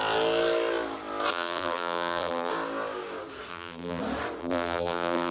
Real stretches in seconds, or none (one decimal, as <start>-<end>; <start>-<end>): 0.0-1.3; 2.5-3.5; 4.0-4.4